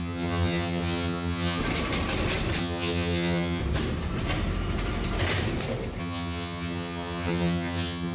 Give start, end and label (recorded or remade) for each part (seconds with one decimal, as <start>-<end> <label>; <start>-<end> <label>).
0.0-1.6 remade; 1.6-2.6 recorded; 2.6-3.6 remade; 3.6-6.0 recorded; 6.0-8.1 remade